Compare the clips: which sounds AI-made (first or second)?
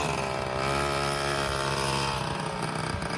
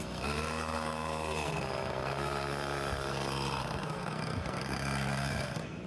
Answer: second